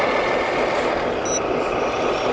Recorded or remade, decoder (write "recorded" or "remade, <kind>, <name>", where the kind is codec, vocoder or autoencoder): recorded